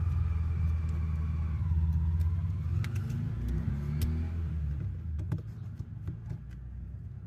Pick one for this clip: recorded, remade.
recorded